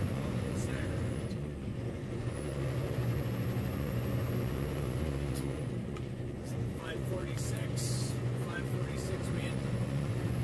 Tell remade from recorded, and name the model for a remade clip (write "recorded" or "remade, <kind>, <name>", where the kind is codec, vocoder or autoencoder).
remade, vocoder, Vocos